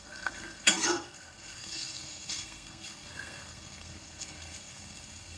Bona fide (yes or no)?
no